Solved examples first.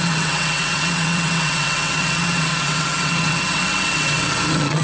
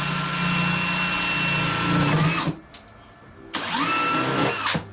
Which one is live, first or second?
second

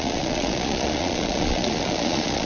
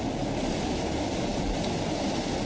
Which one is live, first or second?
second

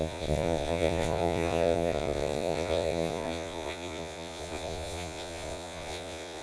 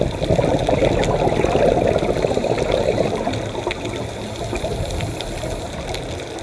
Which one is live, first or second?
second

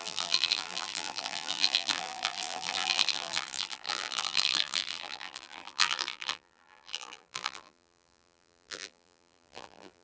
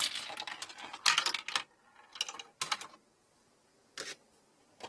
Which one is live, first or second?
second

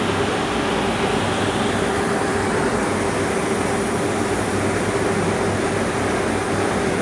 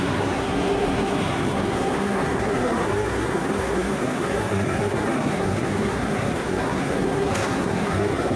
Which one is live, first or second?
first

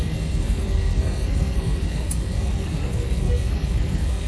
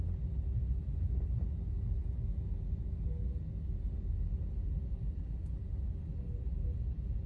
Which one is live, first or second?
second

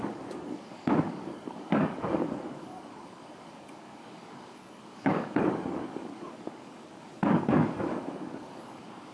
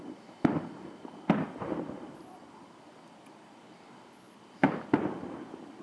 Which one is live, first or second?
second